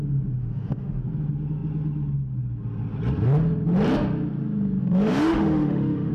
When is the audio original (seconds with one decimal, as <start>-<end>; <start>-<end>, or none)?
0.0-0.4; 1.0-4.8